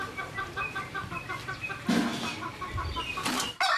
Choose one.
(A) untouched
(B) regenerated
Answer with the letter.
B